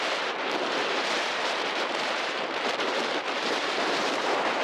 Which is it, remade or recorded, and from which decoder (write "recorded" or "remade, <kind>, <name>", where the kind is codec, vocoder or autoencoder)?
remade, vocoder, BigVGAN v2